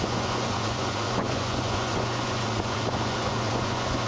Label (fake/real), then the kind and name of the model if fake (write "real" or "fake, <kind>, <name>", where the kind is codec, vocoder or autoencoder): fake, vocoder, Vocos